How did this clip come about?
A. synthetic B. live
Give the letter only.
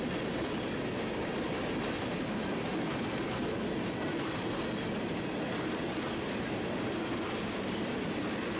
B